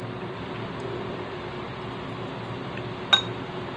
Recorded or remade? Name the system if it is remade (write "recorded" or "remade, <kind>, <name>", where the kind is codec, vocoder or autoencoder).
recorded